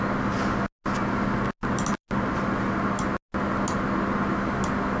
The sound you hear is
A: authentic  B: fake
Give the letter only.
A